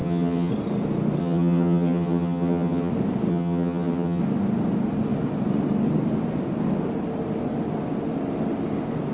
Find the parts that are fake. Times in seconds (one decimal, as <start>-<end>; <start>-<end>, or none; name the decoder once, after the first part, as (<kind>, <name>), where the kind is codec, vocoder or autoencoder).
0.0-0.5 (vocoder, HiFi-GAN); 1.2-2.9; 3.3-4.2